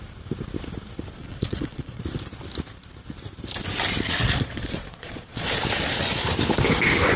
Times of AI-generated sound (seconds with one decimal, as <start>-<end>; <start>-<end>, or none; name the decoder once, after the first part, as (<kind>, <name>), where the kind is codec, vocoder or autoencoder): 1.2-2.0 (vocoder, Vocos); 4.2-5.6